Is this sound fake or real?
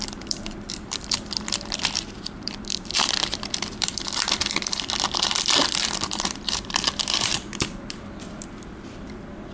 fake